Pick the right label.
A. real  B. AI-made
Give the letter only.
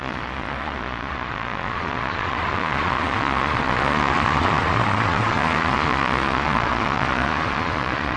B